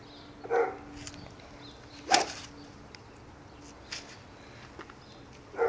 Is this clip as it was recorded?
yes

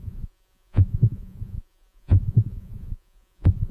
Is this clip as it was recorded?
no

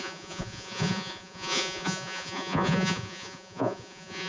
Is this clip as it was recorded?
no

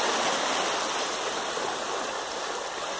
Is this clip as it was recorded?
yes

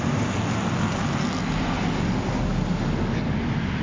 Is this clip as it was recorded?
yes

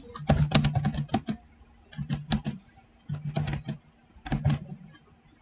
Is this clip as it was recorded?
yes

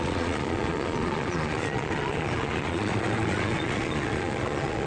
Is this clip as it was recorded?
no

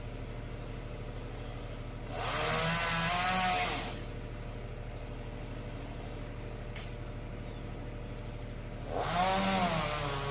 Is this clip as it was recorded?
yes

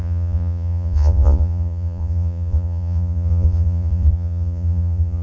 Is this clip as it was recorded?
no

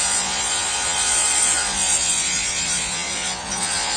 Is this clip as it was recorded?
no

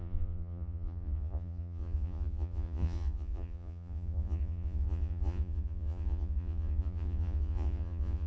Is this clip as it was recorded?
no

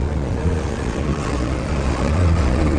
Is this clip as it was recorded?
no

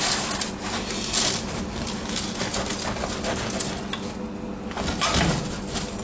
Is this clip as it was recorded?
yes